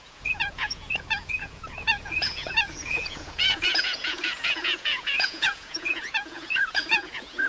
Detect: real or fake fake